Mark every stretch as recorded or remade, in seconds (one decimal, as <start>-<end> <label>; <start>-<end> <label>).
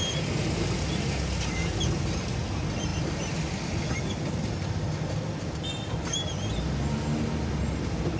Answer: 0.0-8.2 recorded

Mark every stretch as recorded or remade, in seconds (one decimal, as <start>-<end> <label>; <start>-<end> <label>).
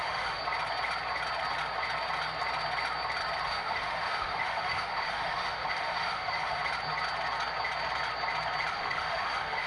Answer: 0.0-0.4 remade; 0.4-3.5 recorded; 3.5-6.6 remade; 6.6-8.7 recorded; 8.7-9.7 remade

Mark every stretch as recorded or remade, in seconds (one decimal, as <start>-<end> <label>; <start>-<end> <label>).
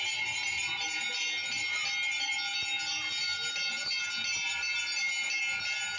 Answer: 0.0-6.0 recorded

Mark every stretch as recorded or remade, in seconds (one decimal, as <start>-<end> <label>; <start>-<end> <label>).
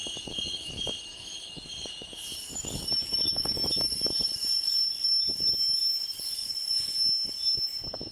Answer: 0.0-3.7 remade; 3.7-8.1 recorded